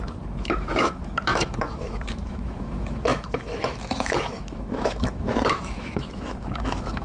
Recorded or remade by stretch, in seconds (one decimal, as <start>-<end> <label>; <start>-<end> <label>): 0.0-7.0 remade